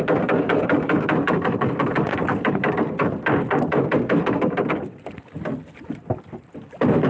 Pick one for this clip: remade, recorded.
recorded